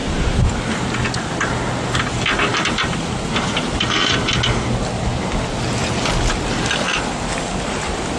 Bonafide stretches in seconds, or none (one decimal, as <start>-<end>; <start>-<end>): 0.5-2.5; 4.2-8.2